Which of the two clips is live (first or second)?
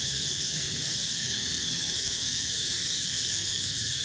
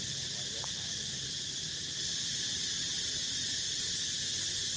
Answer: second